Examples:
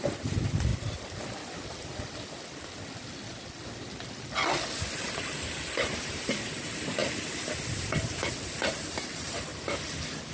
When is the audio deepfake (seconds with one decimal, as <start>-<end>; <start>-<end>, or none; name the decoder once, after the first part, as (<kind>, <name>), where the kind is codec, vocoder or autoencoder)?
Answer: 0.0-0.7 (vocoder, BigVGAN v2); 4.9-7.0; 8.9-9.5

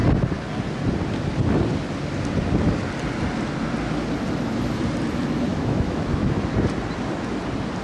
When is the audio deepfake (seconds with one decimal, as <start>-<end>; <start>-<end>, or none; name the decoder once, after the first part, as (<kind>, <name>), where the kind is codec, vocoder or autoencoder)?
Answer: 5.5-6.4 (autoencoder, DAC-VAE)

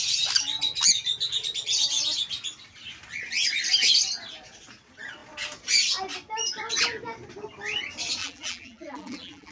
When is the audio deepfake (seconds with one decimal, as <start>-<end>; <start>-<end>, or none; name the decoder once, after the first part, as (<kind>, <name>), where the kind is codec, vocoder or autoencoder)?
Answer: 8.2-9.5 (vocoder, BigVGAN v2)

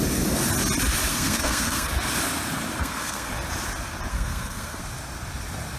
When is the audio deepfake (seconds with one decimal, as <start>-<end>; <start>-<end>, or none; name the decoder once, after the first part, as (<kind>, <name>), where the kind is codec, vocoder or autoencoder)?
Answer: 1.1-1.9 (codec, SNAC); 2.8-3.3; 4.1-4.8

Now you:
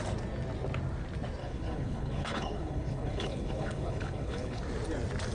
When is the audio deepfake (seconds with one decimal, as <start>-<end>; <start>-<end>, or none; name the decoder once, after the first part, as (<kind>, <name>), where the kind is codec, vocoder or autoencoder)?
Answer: 1.4-4.6 (codec, HILCodec)

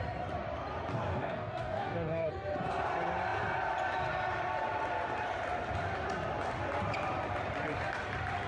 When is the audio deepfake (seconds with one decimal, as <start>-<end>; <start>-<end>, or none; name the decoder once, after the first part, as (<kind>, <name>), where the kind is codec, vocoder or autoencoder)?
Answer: 0.9-2.3 (codec, DAC)

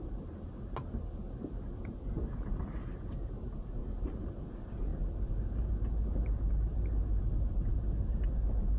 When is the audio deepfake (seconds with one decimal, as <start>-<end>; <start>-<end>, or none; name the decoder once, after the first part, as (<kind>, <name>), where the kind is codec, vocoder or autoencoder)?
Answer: 3.8-4.3 (vocoder, BigVGAN v2)